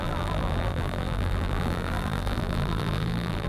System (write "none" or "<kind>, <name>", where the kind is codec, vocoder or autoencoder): vocoder, BigVGAN v2